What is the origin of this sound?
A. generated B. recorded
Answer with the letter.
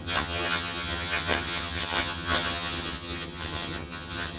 A